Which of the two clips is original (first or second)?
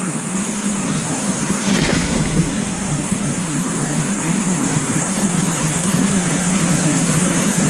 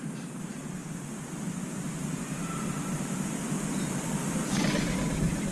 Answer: second